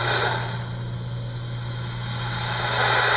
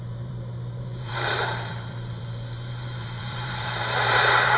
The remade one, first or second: second